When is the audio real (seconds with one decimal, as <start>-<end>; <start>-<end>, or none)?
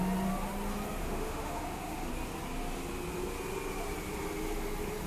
0.0-1.0; 2.1-5.1